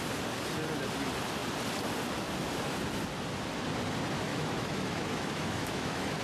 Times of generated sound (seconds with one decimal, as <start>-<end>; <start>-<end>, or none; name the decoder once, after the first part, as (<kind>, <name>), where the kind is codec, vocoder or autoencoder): 4.3-6.2 (autoencoder, DAC-VAE)